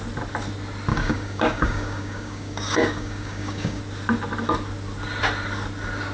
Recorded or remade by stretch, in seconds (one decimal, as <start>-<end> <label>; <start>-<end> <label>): 0.0-0.9 recorded; 0.9-3.8 remade; 3.8-6.1 recorded